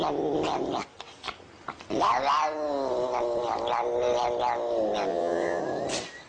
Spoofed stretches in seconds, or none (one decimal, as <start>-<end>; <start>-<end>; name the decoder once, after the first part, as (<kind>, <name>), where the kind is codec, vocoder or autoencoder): 5.1-5.6 (vocoder, WaveNeXt)